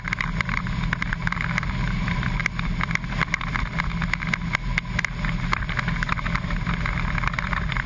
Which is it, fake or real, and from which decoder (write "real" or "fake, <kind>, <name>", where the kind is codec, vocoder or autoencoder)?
real